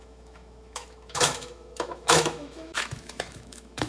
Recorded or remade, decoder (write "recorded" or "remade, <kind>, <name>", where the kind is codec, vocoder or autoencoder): remade, autoencoder, DAC-VAE